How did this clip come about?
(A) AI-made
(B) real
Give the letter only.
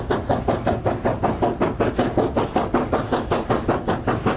B